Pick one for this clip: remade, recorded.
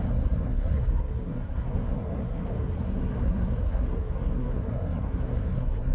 remade